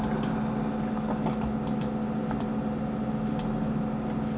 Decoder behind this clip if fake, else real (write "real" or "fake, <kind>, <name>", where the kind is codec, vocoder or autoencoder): real